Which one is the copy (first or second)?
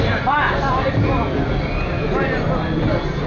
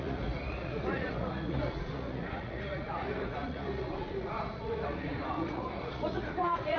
second